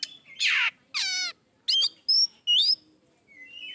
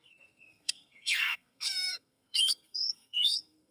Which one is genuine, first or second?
first